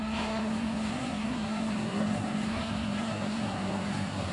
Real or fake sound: fake